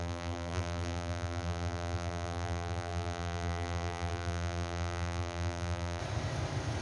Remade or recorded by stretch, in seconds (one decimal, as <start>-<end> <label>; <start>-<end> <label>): 0.0-6.0 remade; 6.0-6.8 recorded